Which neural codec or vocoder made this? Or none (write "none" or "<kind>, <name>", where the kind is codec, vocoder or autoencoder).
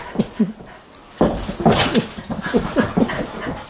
none